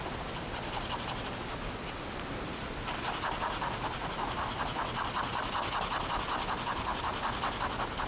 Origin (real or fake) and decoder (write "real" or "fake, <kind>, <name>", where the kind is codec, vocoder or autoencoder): real